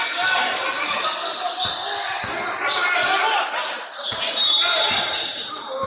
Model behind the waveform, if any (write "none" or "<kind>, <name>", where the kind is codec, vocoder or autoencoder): none